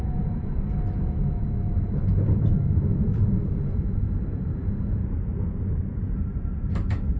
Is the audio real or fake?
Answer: fake